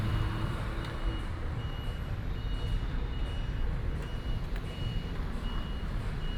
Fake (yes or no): yes